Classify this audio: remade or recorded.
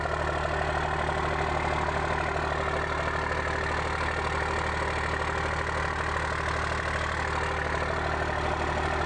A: recorded